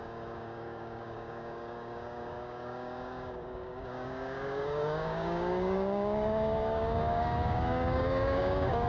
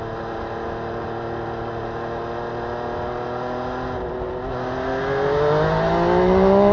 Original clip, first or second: second